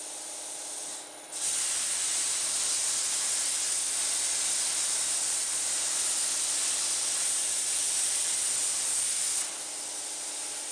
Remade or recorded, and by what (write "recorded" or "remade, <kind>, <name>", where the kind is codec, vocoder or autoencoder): recorded